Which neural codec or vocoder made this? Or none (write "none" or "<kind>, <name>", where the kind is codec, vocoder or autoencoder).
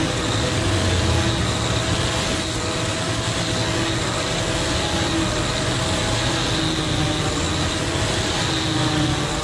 none